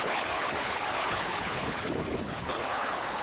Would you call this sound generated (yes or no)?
yes